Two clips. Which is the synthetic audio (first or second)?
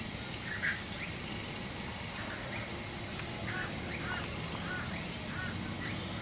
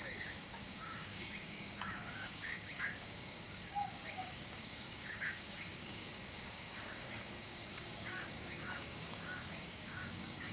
second